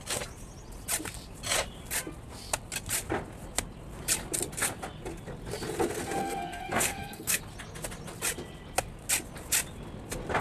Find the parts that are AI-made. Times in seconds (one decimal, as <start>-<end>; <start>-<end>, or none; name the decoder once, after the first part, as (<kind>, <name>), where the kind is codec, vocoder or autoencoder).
6.2-7.4 (codec, SNAC)